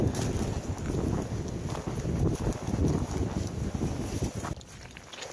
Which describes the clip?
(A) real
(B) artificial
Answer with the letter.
A